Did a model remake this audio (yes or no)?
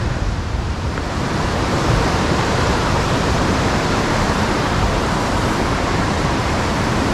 yes